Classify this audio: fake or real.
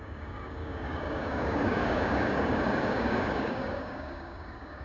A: fake